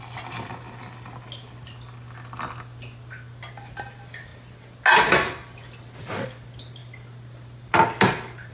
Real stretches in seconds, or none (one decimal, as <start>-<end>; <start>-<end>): 0.0-8.5